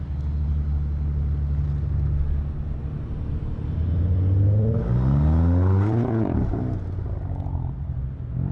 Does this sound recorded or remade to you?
recorded